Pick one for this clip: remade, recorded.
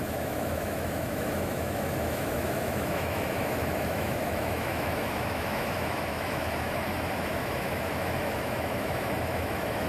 remade